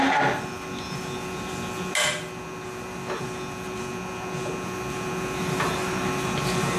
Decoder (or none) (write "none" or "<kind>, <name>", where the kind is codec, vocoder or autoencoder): none